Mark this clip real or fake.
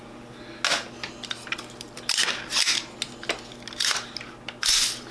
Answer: real